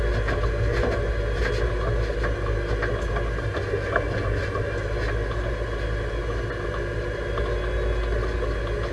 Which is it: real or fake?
real